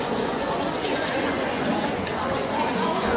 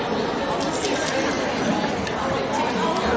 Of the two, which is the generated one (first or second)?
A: first